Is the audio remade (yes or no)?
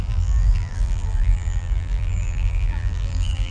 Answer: yes